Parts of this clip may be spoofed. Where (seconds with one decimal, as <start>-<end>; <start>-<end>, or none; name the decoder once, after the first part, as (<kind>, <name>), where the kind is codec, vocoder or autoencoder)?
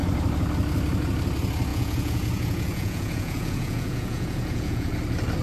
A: 1.7-4.9 (vocoder, Vocos)